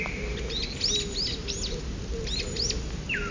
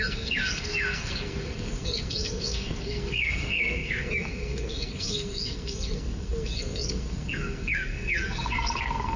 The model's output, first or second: second